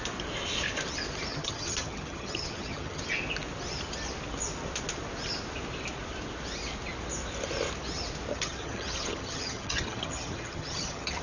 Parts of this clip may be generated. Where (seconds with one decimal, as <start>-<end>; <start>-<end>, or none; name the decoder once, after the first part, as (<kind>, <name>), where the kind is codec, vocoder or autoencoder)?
1.3-3.0 (vocoder, HiFi-GAN); 8.3-11.2